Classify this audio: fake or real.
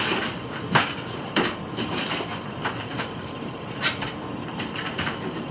fake